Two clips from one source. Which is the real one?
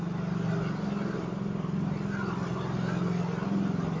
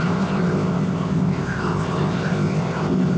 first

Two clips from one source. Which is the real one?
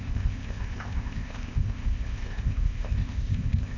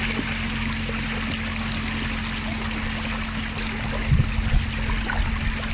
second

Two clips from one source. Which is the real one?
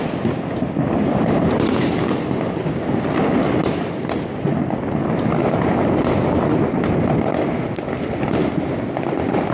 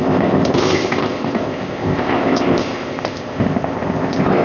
first